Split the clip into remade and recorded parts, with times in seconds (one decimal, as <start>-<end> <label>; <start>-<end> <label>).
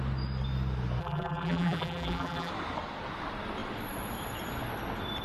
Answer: 0.0-1.0 recorded; 1.0-2.5 remade; 2.5-5.2 recorded